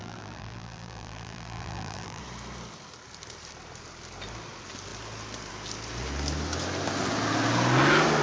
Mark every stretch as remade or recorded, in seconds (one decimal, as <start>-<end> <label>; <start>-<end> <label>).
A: 0.0-2.2 remade; 2.2-8.2 recorded

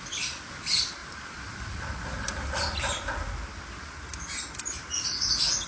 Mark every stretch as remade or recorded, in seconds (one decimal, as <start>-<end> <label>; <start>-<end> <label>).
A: 0.0-5.7 recorded